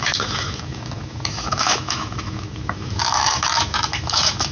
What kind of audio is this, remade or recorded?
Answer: remade